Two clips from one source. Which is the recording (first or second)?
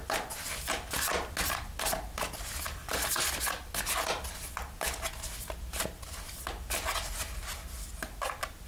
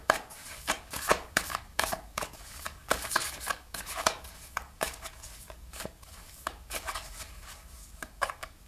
first